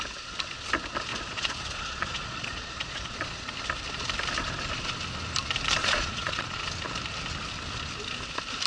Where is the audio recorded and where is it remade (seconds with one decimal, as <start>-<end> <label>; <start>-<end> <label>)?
0.0-1.1 recorded; 1.1-3.5 remade; 3.5-5.8 recorded; 5.8-6.7 remade; 6.7-8.7 recorded